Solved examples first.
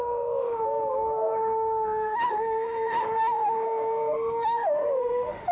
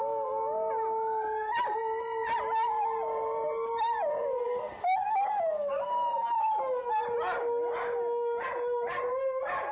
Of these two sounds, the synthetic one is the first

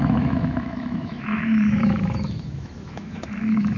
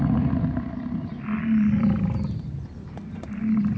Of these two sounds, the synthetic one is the first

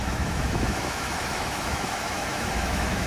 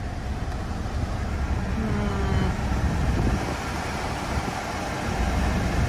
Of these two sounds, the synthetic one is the first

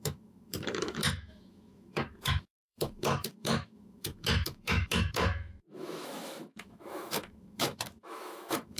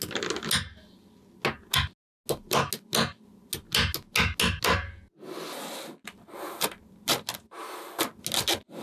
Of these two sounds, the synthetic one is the first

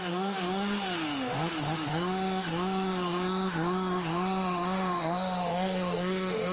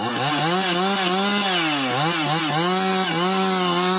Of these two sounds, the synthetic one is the first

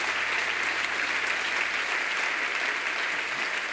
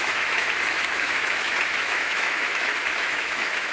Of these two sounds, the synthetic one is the second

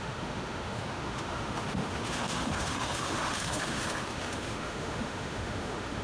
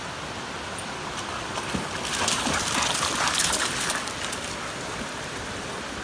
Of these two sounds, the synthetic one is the first